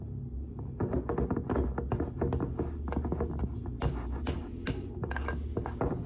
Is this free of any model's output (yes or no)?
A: yes